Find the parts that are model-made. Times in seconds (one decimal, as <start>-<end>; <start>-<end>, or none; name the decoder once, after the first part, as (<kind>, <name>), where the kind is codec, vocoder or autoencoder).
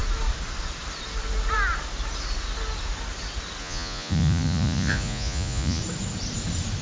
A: 3.6-5.8 (vocoder, Vocos)